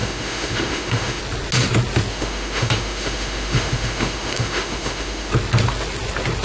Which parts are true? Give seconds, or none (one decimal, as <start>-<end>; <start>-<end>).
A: 1.2-2.1; 5.3-6.4